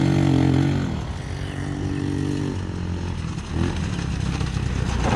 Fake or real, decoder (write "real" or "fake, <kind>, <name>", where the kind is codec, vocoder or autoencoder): real